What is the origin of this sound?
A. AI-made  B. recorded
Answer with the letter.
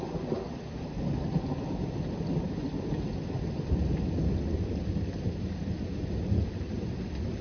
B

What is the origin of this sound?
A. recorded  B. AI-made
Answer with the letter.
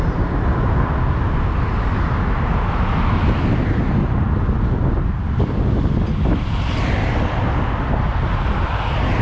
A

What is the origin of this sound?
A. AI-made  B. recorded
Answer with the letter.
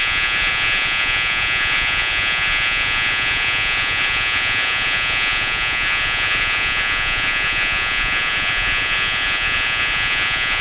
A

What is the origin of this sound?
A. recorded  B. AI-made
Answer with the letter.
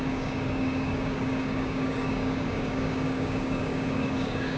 B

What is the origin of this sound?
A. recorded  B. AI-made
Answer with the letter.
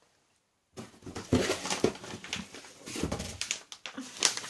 A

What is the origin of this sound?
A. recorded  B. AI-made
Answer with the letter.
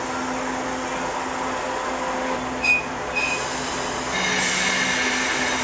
A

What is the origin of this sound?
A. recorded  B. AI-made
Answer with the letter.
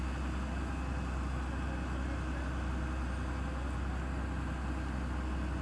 A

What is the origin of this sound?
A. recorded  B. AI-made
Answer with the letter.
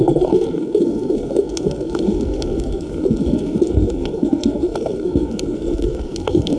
B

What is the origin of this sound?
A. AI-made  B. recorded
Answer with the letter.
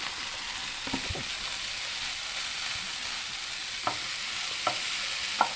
B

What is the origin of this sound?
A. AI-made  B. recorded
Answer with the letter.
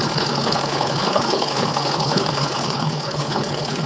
A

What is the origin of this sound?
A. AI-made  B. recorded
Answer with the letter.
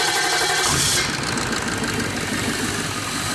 B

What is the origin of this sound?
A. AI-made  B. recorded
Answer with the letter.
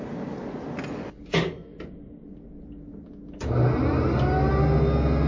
B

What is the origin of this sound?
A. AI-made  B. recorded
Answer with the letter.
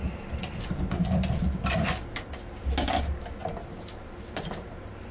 B